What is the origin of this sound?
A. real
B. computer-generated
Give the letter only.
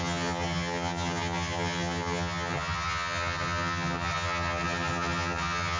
B